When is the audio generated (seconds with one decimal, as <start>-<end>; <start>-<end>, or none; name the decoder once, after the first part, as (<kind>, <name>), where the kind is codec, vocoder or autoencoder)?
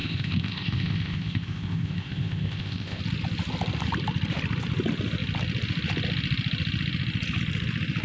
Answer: 0.0-3.0 (codec, ZipCodec)